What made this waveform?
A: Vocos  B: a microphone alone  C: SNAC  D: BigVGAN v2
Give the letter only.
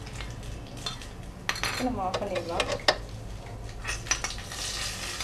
B